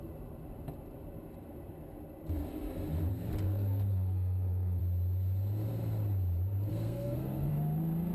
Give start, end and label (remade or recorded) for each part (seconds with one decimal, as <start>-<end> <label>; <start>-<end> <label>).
0.0-3.1 recorded; 3.1-4.8 remade; 4.8-6.7 recorded; 6.7-7.5 remade; 7.5-8.1 recorded